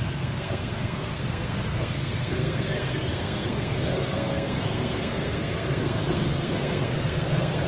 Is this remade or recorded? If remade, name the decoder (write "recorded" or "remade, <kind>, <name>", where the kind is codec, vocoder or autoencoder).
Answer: remade, codec, SNAC